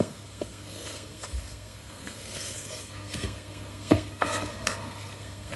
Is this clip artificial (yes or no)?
yes